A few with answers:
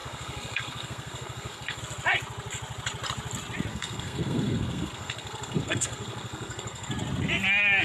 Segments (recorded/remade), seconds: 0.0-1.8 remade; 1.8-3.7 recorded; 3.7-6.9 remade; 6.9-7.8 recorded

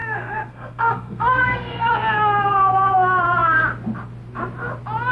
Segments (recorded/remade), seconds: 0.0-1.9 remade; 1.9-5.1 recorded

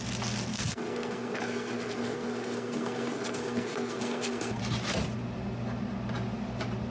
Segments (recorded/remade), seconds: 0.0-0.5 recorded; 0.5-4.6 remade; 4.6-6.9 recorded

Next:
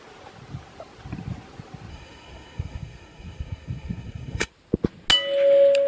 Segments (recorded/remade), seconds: 0.0-1.9 recorded; 1.9-4.5 remade; 4.5-5.9 recorded